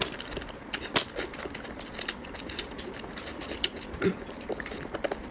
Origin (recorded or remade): remade